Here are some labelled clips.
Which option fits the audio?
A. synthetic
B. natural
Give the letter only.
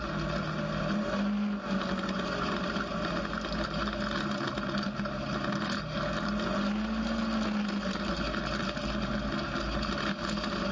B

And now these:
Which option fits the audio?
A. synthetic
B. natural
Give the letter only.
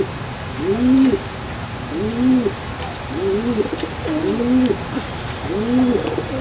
B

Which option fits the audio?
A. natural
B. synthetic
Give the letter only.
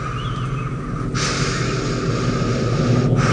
A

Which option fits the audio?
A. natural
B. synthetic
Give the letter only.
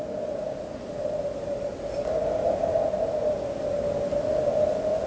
A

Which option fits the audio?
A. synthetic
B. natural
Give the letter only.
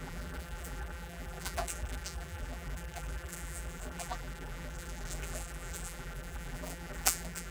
A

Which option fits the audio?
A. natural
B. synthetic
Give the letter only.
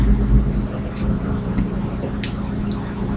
A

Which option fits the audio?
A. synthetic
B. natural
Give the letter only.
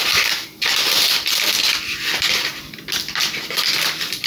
A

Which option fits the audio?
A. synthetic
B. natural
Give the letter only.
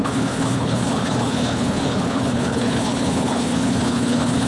A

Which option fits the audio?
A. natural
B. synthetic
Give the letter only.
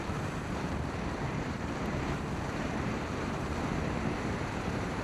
B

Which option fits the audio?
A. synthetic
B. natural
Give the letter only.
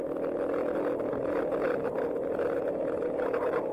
B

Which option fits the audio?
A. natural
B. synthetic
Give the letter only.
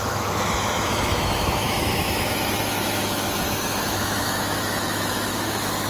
B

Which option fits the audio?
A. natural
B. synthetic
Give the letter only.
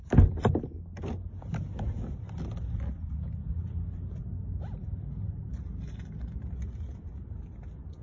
A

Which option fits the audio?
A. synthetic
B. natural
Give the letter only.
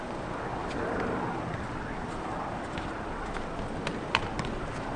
B